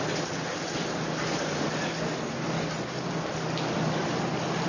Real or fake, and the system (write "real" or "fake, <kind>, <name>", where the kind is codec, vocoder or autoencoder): real